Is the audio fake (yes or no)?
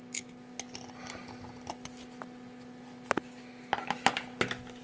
no